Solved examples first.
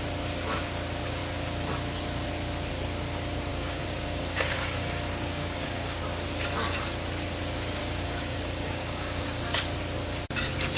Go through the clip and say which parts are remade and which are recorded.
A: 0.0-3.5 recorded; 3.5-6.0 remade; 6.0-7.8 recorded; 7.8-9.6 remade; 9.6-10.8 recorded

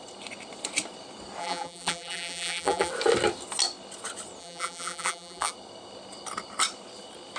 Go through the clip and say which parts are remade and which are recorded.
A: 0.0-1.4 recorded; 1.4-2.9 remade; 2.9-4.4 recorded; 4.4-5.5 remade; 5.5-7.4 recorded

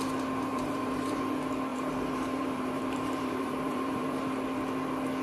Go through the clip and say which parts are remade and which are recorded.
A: 0.0-0.5 recorded; 0.5-1.2 remade; 1.2-1.7 recorded; 1.7-4.2 remade; 4.2-5.2 recorded